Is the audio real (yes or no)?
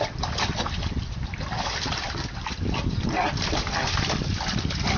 yes